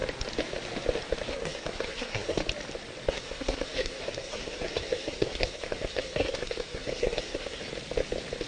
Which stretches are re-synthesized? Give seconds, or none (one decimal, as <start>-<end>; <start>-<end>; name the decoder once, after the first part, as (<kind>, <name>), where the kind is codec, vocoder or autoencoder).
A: 1.3-2.4 (codec, SNAC); 3.1-7.6